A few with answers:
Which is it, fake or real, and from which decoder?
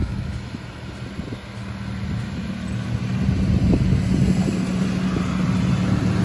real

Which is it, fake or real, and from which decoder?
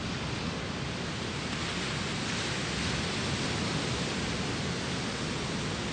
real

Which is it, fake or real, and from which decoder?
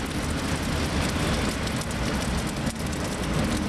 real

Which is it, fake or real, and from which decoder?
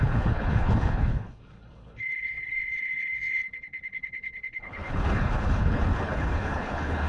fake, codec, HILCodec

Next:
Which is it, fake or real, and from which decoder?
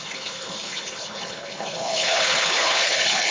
fake, codec, HILCodec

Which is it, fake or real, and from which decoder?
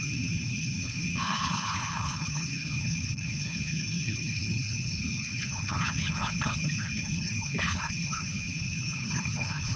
fake, codec, HILCodec